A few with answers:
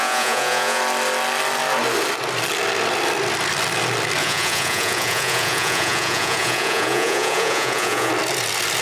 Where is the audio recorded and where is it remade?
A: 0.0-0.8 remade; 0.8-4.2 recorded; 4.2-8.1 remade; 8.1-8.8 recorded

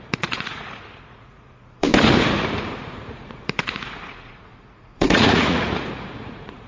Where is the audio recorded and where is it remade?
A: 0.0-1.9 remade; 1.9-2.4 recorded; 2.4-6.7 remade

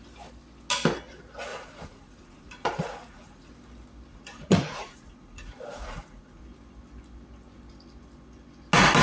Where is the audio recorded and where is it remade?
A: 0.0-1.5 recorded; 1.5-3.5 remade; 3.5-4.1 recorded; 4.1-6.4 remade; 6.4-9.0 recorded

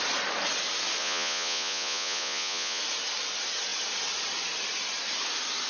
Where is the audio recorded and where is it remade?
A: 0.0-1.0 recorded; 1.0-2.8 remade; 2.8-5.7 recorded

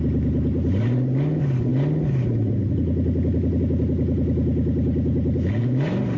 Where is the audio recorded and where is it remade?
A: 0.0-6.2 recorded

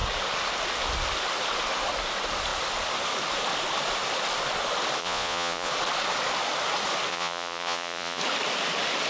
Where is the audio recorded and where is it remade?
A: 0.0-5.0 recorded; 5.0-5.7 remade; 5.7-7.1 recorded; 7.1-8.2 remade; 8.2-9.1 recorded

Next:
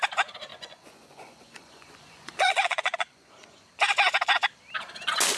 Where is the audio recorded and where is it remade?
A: 0.0-0.5 recorded; 0.5-3.7 remade; 3.7-5.4 recorded